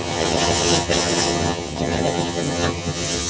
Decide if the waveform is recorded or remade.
remade